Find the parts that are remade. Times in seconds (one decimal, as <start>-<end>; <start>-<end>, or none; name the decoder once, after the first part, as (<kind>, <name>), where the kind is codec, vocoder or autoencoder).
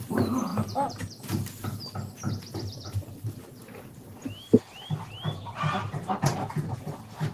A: 0.0-6.3 (vocoder, BigVGAN v2); 6.8-7.3